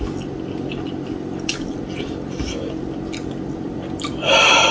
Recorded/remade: recorded